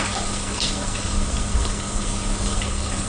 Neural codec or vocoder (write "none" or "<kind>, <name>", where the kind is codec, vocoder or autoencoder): codec, SNAC